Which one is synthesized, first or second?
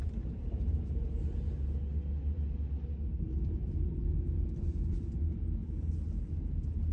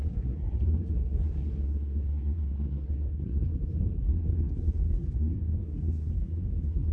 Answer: second